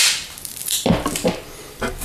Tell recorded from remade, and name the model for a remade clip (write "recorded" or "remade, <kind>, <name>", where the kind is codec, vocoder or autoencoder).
recorded